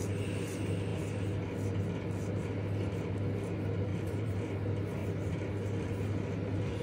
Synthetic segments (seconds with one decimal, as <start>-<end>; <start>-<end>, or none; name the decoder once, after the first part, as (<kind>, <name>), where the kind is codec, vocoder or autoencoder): 3.9-4.5 (vocoder, BigVGAN v2)